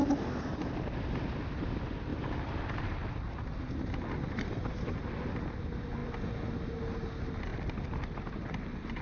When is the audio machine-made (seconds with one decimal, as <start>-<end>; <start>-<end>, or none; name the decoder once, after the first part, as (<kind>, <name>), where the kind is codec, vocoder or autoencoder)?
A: none